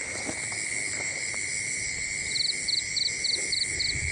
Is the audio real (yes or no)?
yes